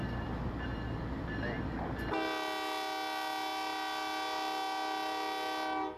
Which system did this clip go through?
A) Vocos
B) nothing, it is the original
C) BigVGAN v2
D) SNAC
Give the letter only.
B